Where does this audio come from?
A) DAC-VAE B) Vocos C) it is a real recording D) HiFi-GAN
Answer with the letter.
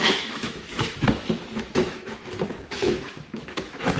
A